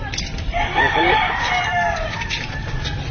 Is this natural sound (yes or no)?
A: no